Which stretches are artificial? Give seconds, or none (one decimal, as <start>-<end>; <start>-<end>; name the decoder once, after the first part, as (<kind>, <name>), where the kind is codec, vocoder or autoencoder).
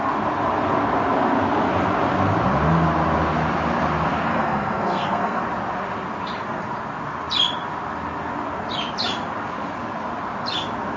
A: 4.3-5.4 (codec, SNAC)